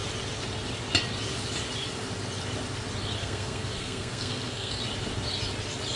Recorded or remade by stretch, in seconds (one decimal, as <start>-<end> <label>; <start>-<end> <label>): 0.0-3.2 recorded; 3.2-4.8 remade; 4.8-6.0 recorded